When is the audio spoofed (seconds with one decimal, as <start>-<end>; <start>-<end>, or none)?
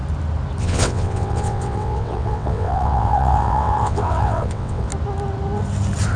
0.6-4.9